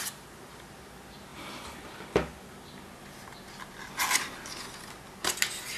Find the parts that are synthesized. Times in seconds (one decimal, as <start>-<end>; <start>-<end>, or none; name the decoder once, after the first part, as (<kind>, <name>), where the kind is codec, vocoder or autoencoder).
none